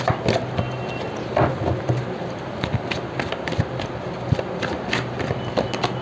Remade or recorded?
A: recorded